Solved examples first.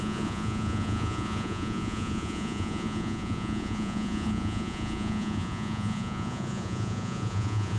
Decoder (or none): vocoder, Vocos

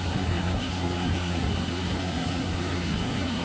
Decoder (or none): codec, SNAC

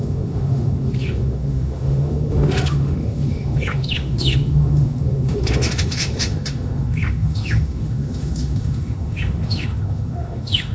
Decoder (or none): autoencoder, DAC-VAE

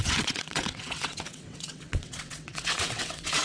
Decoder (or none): vocoder, WaveNeXt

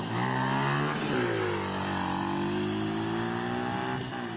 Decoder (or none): none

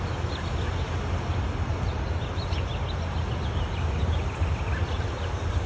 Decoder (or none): none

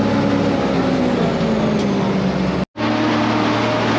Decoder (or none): none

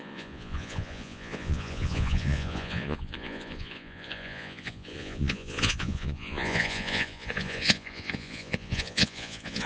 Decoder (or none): vocoder, Vocos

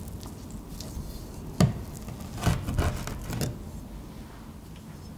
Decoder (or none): none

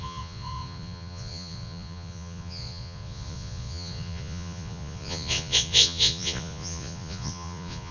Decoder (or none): vocoder, Vocos